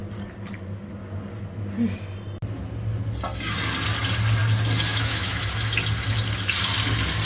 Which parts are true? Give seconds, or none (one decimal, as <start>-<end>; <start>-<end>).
0.0-4.9; 5.4-7.3